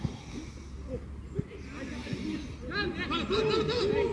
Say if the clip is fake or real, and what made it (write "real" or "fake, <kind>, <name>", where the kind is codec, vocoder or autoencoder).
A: real